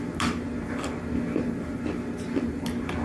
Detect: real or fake real